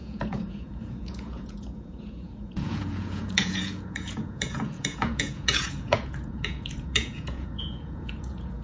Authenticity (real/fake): fake